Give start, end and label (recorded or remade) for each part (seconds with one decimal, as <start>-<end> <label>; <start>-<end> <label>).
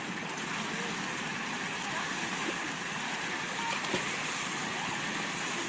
0.0-1.3 recorded; 1.3-4.2 remade; 4.2-5.7 recorded